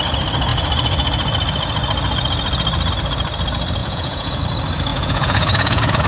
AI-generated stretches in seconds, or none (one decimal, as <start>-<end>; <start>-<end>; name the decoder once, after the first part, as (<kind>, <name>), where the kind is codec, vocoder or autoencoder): 3.8-4.4 (vocoder, Vocos); 4.9-6.1